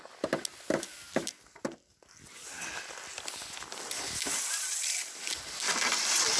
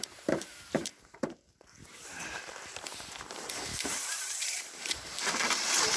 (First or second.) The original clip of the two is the first